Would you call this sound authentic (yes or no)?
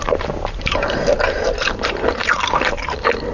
no